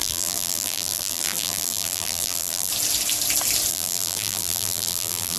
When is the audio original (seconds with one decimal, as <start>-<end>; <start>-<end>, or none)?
2.7-3.7